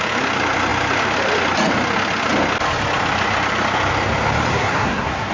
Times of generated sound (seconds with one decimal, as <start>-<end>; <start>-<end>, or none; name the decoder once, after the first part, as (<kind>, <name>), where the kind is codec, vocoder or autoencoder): 4.5-5.3 (codec, SNAC)